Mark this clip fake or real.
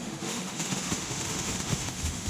fake